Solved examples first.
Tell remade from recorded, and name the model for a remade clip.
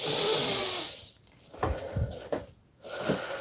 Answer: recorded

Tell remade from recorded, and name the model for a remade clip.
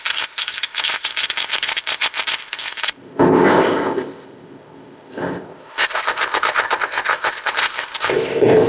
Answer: remade, codec, ZipCodec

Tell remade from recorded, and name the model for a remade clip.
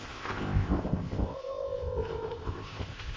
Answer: remade, codec, ZipCodec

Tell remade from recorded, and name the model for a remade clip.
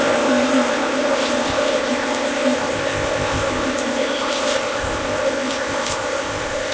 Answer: remade, codec, ZipCodec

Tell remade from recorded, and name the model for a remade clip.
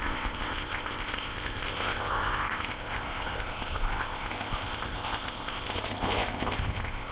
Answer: remade, codec, ZipCodec